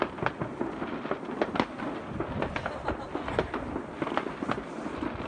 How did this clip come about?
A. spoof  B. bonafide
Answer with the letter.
B